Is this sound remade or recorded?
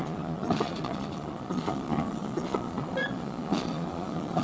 remade